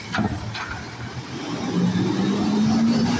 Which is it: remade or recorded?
recorded